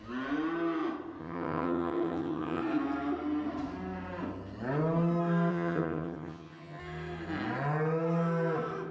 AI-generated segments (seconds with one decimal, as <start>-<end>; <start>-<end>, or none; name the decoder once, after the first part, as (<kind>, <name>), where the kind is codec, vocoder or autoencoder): 1.2-2.6 (vocoder, HiFi-GAN); 5.5-6.8